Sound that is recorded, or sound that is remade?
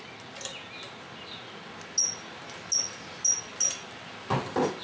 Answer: recorded